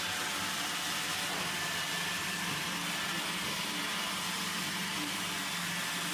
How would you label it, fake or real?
real